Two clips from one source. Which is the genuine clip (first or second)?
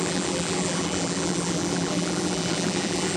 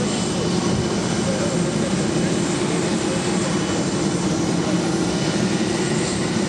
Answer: second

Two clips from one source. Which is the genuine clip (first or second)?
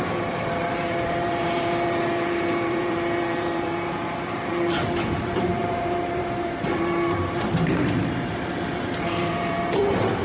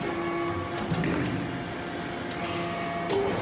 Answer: second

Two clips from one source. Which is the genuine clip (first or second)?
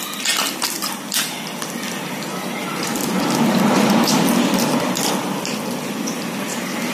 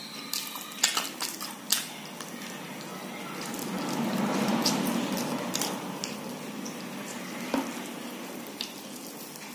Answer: second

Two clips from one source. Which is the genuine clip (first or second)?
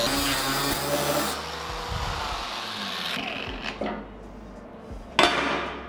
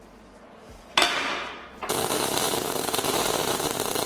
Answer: first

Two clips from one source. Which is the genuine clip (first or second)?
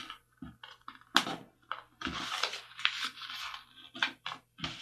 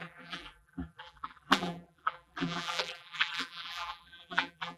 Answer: first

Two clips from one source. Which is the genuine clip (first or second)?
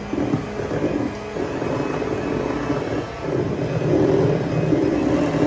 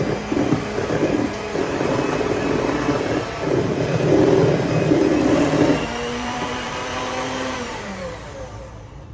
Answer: first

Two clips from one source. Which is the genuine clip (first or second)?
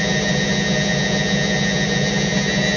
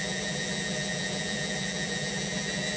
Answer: first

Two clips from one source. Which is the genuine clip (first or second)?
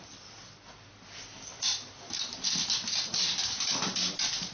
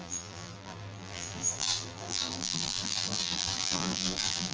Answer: first